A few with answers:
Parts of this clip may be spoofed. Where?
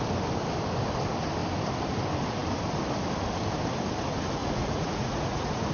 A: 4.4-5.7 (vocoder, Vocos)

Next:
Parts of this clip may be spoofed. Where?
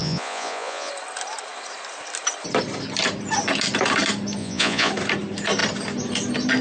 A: 0.0-0.9 (vocoder, Vocos); 4.4-4.9